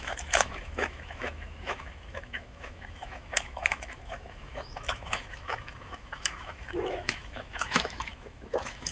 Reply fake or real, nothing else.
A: fake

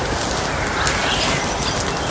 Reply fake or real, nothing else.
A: real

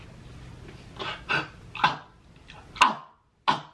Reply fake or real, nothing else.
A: real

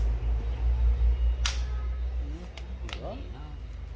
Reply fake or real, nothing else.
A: real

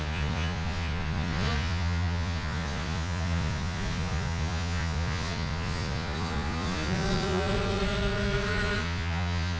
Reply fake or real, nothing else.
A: fake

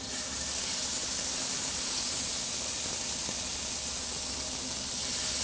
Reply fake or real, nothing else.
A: real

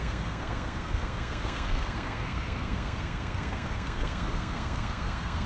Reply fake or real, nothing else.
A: fake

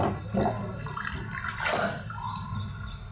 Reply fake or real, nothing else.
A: real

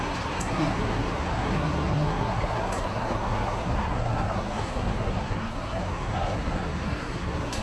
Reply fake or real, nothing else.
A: fake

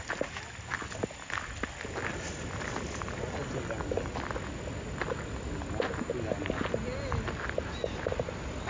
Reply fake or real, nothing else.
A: real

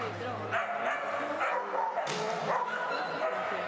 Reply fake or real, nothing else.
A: real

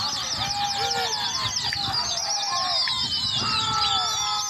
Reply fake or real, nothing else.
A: real